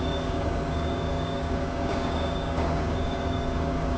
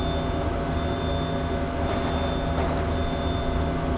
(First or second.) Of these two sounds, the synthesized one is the first